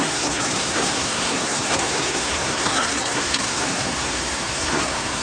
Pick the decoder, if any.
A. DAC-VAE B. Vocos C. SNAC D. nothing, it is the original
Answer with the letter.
C